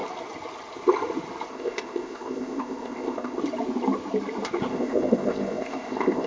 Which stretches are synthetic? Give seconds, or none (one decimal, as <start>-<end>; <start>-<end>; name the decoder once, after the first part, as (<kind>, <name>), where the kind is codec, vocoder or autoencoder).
1.5-3.4 (codec, ZipCodec); 4.7-6.3